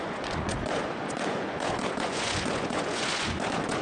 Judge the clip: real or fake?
fake